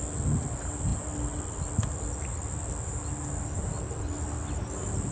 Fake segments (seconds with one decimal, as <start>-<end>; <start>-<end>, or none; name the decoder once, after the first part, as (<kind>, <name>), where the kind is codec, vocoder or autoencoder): none